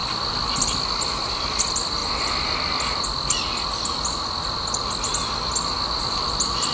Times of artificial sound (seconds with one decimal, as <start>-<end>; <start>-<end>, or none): 0.0-2.0; 6.0-6.7